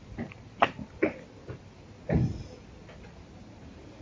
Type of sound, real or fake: real